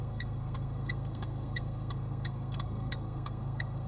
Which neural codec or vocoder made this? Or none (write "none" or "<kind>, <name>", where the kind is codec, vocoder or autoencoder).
codec, SNAC